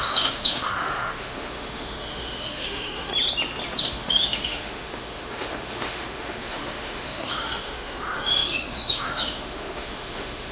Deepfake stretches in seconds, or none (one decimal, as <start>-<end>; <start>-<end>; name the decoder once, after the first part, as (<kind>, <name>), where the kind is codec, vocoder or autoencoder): 0.0-3.1 (autoencoder, DAC-VAE); 3.8-10.5